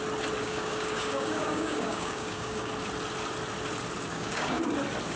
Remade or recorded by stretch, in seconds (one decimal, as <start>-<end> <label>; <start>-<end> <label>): 0.0-0.4 recorded; 0.4-2.7 remade; 2.7-4.1 recorded; 4.1-4.6 remade; 4.6-5.2 recorded